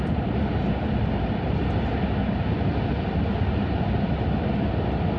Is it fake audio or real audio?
real